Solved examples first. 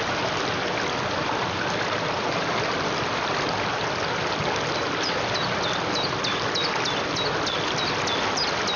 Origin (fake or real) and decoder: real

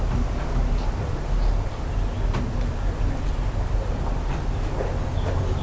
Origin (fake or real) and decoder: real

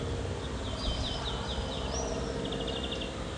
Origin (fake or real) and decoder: real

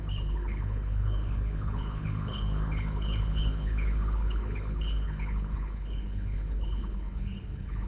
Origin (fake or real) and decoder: fake, codec, HILCodec